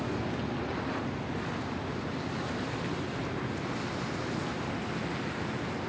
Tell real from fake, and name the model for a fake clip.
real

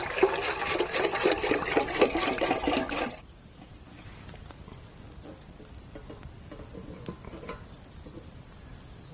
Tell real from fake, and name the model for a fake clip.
real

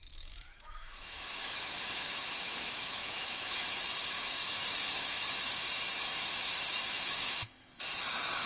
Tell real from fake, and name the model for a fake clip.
fake, autoencoder, DAC-VAE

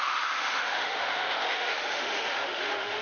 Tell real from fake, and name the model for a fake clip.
fake, autoencoder, DAC-VAE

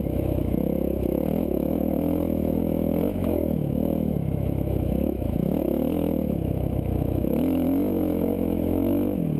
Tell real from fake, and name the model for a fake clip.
fake, autoencoder, DAC-VAE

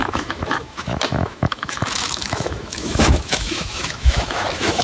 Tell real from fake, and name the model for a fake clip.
fake, autoencoder, DAC-VAE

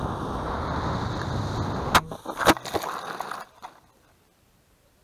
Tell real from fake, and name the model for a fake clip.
real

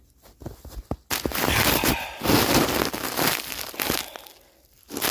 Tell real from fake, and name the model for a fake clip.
real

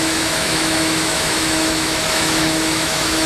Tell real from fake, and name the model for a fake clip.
fake, autoencoder, DAC-VAE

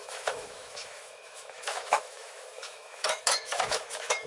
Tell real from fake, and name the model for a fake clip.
fake, autoencoder, DAC-VAE